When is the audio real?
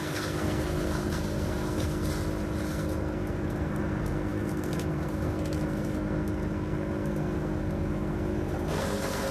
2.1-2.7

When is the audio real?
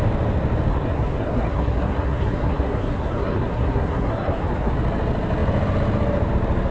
0.0-0.7; 4.7-6.7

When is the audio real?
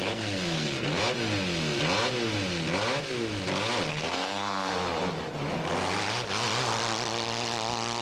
1.0-3.9; 4.7-8.0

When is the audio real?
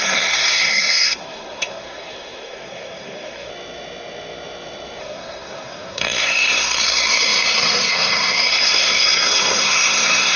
3.5-5.0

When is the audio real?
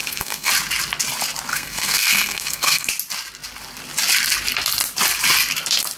0.5-1.5; 2.9-6.0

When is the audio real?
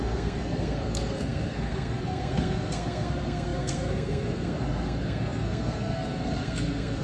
none